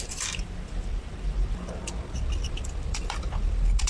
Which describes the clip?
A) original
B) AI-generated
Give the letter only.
B